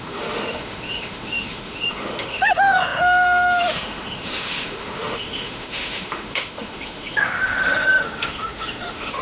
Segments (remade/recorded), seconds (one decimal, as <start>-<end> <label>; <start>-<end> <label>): 0.0-9.2 remade

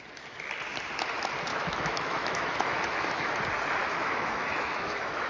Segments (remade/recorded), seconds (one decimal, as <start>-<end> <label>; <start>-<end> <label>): 0.0-1.5 recorded; 1.5-3.3 remade; 3.3-3.8 recorded; 3.8-5.3 remade